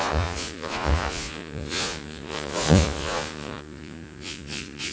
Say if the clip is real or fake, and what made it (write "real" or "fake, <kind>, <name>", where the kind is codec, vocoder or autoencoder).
fake, vocoder, Vocos